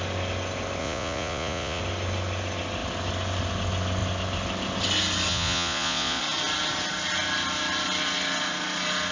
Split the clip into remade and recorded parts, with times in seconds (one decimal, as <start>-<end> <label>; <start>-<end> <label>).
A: 0.0-0.8 recorded; 0.8-1.8 remade; 1.8-5.3 recorded; 5.3-6.2 remade; 6.2-9.1 recorded